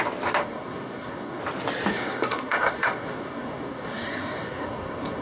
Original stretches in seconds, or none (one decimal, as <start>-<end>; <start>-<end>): 0.0-0.4; 1.4-1.9